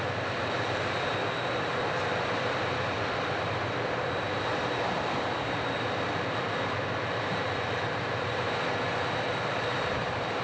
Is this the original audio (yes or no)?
no